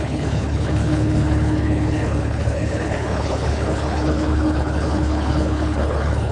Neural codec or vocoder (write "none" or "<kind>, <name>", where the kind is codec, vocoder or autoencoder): codec, HILCodec